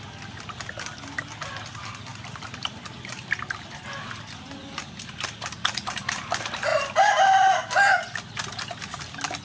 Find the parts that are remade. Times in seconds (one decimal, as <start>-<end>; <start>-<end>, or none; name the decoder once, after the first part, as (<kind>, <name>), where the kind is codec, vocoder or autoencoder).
none